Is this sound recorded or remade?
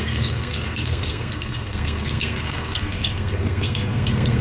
remade